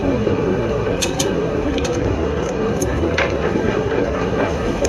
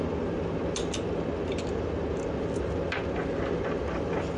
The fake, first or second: first